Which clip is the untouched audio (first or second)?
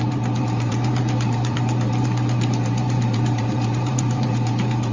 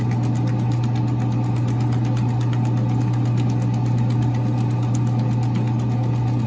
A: second